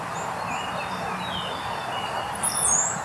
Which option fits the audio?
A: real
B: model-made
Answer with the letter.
A